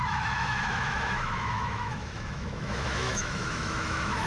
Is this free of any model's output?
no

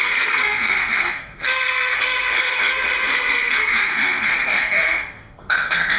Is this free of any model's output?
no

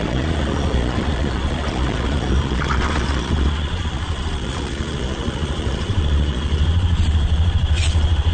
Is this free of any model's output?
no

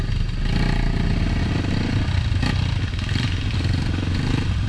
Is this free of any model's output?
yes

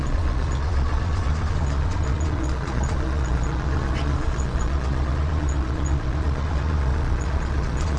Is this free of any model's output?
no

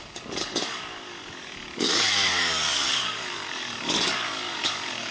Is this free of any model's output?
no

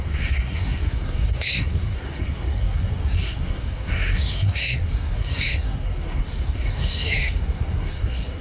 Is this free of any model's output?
no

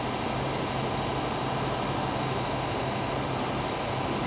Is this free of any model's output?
yes